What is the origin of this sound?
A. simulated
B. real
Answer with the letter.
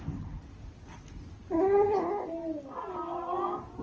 B